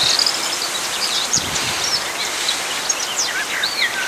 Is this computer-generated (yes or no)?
no